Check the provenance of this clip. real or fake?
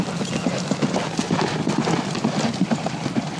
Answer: real